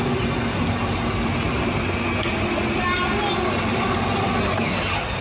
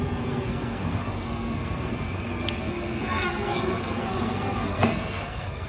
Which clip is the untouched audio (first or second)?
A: first